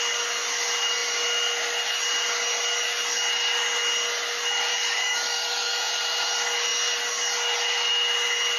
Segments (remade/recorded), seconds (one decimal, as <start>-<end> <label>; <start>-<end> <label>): 0.0-4.7 recorded; 4.7-6.0 remade; 6.0-8.6 recorded